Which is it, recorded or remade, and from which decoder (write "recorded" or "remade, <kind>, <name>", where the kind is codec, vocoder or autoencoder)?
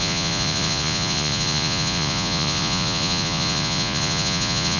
remade, vocoder, Vocos